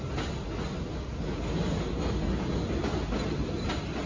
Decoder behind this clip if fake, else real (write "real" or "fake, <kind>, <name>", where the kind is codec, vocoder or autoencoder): real